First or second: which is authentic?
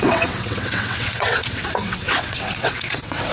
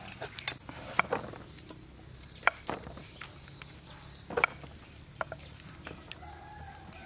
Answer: second